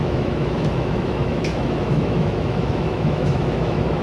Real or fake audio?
fake